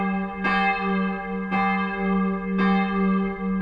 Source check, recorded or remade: recorded